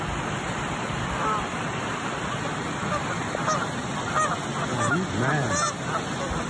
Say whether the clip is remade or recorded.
recorded